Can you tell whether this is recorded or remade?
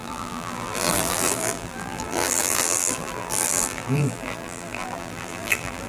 remade